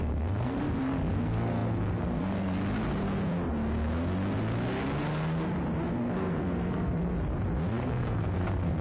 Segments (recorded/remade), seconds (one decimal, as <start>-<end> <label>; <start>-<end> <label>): 0.0-2.6 remade; 2.6-5.9 recorded; 5.9-7.1 remade; 7.1-7.7 recorded; 7.7-8.8 remade